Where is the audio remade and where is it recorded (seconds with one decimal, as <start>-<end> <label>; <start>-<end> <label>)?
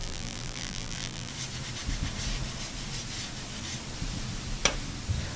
0.0-1.3 remade; 1.3-5.4 recorded